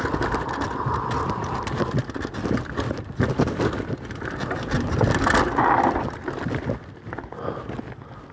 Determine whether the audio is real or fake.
real